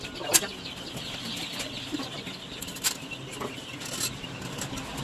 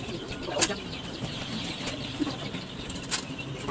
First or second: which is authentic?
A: first